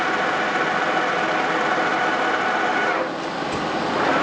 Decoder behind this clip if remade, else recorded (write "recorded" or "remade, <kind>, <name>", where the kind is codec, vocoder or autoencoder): recorded